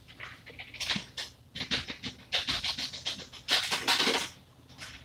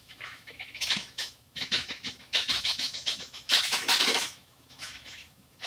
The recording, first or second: first